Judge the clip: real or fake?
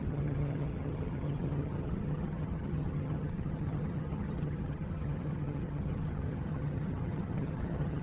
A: fake